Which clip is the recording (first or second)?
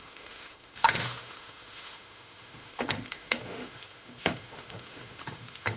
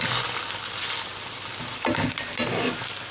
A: second